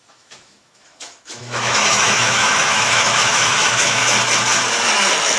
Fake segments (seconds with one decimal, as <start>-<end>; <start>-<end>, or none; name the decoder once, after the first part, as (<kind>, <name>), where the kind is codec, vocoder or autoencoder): 0.0-4.0 (autoencoder, DAC-VAE)